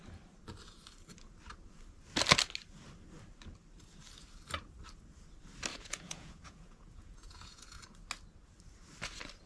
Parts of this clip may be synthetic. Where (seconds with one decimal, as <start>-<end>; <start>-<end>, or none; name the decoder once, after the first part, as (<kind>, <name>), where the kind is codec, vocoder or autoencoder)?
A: 5.7-7.8 (vocoder, Vocos)